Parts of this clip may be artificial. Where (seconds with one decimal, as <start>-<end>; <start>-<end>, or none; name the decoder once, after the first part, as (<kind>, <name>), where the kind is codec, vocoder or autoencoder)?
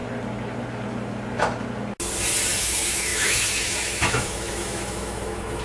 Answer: 2.6-5.6 (autoencoder, DAC-VAE)